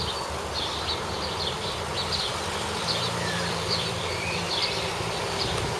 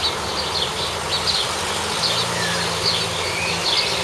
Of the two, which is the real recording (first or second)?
second